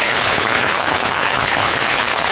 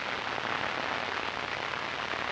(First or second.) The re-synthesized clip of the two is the first